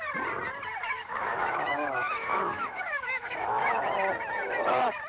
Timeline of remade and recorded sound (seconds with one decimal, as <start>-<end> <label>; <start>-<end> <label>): 0.0-0.8 recorded; 0.8-3.9 remade; 3.9-5.1 recorded